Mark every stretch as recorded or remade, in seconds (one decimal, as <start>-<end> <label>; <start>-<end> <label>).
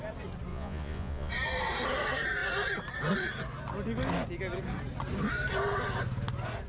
0.0-0.5 recorded; 0.5-1.3 remade; 1.3-6.7 recorded